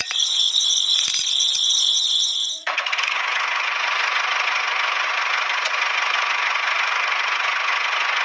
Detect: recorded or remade remade